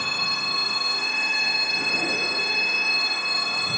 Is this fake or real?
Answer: fake